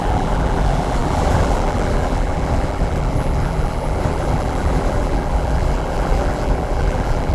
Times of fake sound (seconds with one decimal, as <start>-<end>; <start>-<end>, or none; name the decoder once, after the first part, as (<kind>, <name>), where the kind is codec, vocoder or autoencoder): 0.0-7.3 (vocoder, BigVGAN v2)